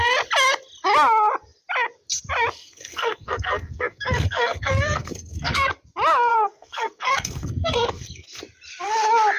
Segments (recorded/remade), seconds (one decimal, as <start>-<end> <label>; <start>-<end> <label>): 0.0-2.6 recorded; 2.6-5.7 remade; 5.7-6.3 recorded; 6.3-8.4 remade; 8.4-9.4 recorded